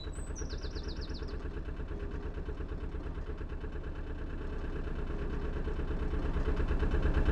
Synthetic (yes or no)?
no